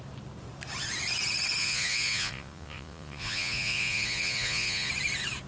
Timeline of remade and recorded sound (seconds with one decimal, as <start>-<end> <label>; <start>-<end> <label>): 0.0-1.6 recorded; 1.6-4.9 remade; 4.9-5.5 recorded